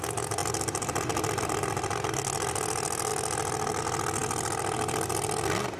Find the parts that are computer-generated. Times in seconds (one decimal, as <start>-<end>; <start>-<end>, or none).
none